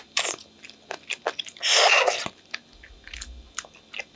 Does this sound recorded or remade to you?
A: recorded